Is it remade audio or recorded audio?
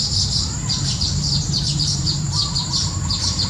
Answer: remade